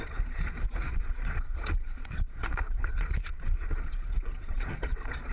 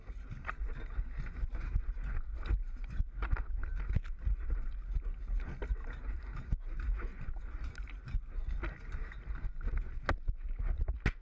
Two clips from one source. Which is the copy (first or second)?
first